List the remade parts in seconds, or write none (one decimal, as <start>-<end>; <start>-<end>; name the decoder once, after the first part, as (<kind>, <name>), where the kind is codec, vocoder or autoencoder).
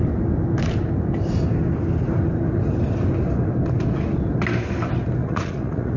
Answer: 5.2-6.0 (vocoder, Vocos)